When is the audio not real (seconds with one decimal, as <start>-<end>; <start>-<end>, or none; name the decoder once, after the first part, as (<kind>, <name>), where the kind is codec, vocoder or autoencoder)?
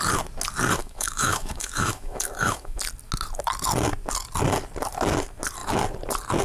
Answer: 0.8-2.8 (autoencoder, DAC-VAE)